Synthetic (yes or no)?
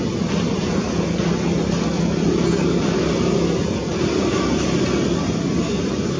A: no